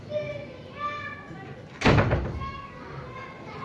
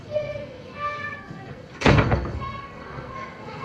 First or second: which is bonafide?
first